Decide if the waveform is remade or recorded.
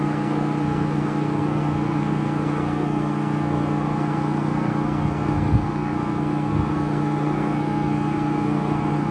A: remade